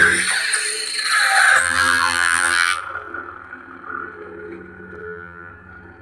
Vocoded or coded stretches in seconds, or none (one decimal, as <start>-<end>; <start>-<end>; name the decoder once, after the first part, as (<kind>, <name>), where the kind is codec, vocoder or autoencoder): 1.6-2.8 (vocoder, BigVGAN v2); 5.0-5.5